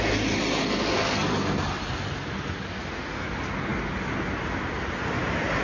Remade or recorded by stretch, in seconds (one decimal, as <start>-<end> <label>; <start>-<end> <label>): 0.0-5.6 recorded